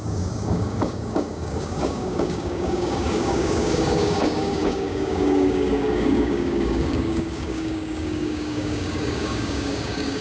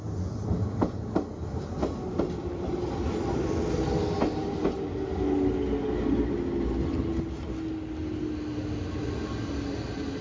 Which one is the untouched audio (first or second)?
second